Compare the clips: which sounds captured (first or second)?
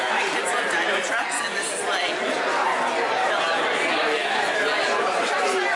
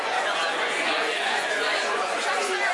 first